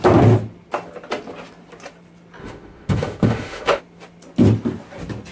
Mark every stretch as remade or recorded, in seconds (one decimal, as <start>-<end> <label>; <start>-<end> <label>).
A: 0.0-2.4 recorded; 2.4-3.8 remade; 3.8-5.3 recorded